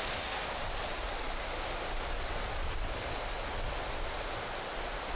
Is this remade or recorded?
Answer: recorded